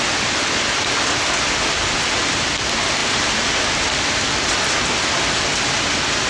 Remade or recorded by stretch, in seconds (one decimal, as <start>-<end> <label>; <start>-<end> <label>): 0.0-6.3 recorded